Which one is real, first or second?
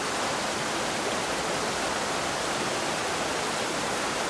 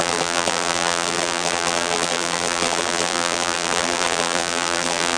first